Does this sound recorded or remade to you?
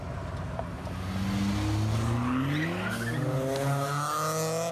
recorded